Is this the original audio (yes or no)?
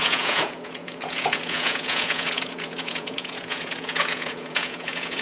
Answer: no